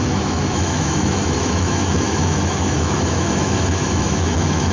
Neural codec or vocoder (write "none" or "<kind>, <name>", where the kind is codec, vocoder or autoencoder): autoencoder, DAC-VAE